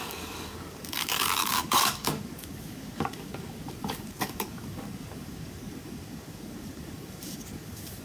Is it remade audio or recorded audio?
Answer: remade